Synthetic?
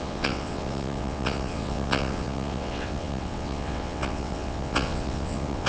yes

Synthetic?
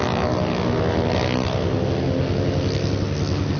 no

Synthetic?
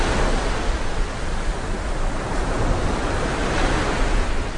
no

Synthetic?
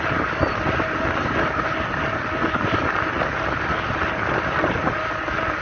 no